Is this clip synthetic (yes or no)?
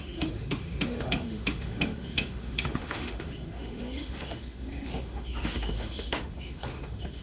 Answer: yes